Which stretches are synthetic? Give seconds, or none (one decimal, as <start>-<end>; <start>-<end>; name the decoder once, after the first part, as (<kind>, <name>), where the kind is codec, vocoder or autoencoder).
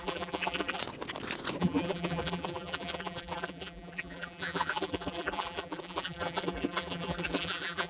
0.0-0.8 (vocoder, BigVGAN v2); 1.6-7.9